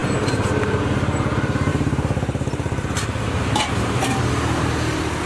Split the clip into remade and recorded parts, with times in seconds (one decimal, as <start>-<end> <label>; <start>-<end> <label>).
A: 0.0-1.7 recorded; 1.7-4.2 remade; 4.2-5.3 recorded